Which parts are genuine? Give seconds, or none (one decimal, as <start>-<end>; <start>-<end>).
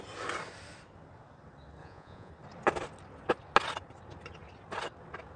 0.0-1.8; 2.3-5.4